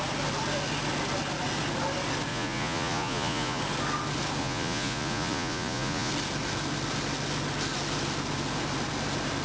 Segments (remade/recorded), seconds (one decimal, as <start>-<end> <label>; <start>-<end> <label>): 0.0-2.3 recorded; 2.3-3.6 remade; 3.6-4.4 recorded; 4.4-6.1 remade; 6.1-9.4 recorded